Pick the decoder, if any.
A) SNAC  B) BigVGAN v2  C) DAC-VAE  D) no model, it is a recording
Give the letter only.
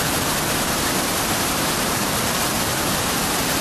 B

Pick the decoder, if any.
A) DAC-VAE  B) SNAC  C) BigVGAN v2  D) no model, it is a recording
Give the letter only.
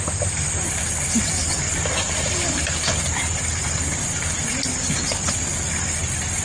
C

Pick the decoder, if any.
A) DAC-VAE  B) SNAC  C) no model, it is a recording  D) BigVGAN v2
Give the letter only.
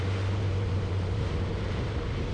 D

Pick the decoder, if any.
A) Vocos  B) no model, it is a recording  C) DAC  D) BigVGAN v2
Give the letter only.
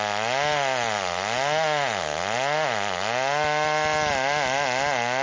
B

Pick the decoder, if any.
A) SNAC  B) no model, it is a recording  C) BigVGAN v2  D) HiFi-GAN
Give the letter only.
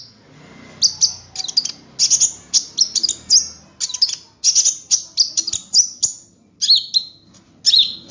B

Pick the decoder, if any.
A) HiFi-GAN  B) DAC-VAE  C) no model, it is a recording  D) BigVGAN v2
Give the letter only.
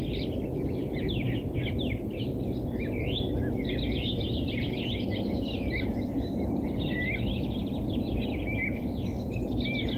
C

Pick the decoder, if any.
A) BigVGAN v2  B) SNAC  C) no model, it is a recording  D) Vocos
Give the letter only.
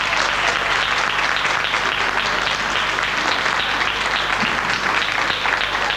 C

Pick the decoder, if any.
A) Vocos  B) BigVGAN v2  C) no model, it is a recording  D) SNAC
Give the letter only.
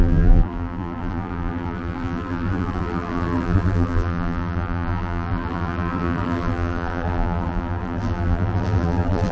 B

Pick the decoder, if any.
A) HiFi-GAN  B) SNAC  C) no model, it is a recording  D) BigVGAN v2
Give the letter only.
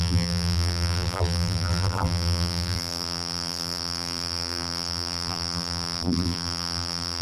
D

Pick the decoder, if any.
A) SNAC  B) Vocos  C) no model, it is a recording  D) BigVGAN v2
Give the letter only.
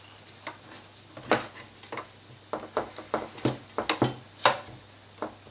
C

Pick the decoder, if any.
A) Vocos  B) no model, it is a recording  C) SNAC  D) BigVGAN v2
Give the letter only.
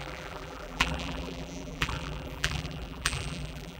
D